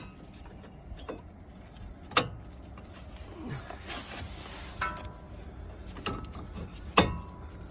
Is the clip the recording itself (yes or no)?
yes